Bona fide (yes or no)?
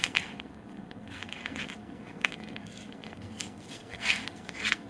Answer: no